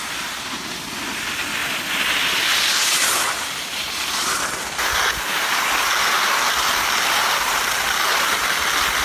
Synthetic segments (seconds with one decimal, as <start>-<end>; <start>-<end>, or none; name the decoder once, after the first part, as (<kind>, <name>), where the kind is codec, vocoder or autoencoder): 1.6-2.9 (vocoder, BigVGAN v2); 3.7-4.8